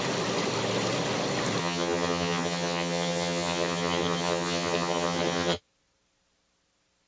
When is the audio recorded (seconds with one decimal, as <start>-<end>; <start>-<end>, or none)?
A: 0.0-1.6; 5.6-7.1